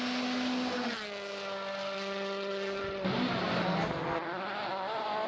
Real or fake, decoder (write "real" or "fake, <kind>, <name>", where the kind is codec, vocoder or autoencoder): real